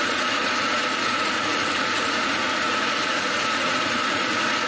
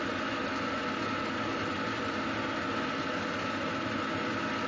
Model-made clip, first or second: first